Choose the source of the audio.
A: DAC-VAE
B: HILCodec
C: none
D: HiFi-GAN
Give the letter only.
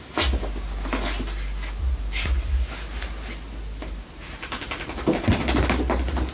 C